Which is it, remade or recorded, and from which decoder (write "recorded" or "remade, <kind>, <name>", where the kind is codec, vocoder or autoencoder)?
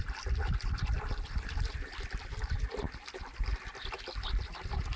remade, vocoder, BigVGAN v2